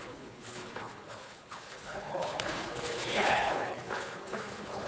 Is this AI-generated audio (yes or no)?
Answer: yes